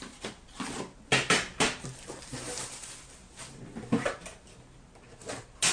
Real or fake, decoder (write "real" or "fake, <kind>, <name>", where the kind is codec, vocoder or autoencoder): real